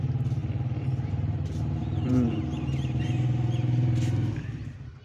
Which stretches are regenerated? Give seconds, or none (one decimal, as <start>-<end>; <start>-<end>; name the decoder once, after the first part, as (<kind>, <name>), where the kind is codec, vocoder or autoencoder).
1.8-3.0 (vocoder, BigVGAN v2)